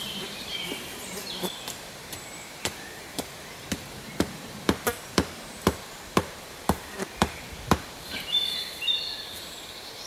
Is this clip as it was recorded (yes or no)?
no